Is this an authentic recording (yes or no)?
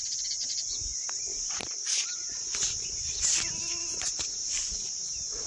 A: yes